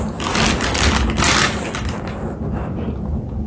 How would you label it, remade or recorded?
recorded